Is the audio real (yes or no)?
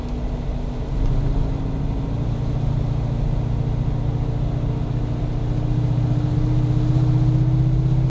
yes